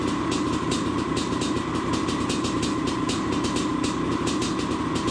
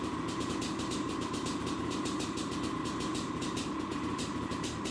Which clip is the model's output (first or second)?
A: second